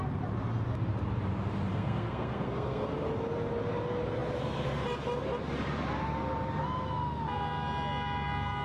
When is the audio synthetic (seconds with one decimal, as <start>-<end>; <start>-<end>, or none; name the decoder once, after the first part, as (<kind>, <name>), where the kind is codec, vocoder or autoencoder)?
1.7-2.9 (codec, SNAC)